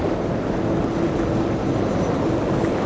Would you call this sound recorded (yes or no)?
yes